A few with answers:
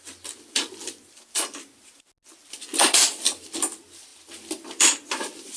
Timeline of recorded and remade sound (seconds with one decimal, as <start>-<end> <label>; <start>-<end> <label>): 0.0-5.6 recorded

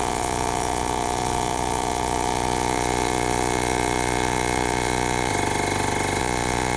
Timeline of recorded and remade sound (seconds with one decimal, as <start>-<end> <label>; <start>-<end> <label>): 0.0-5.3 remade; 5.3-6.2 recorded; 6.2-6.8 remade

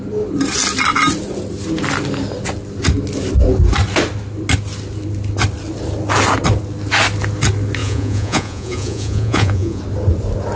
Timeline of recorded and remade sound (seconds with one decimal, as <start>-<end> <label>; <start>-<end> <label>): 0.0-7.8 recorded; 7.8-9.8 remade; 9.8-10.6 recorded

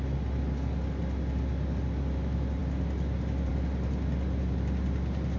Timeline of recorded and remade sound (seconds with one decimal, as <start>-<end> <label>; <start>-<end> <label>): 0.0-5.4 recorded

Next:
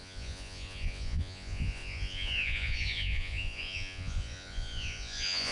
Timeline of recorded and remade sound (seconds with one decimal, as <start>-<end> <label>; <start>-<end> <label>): 0.0-5.5 remade

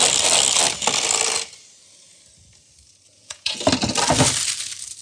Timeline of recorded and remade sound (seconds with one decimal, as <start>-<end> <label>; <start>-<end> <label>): 0.0-3.1 recorded; 3.1-3.6 remade; 3.6-5.0 recorded

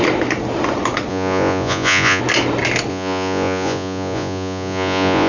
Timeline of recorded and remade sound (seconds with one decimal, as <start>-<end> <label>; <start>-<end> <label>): 0.0-1.1 recorded; 1.1-2.2 remade; 2.2-2.9 recorded; 2.9-5.3 remade